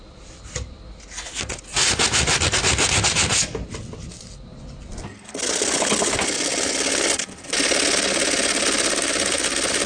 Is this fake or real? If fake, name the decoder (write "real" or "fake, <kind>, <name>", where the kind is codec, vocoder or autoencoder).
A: real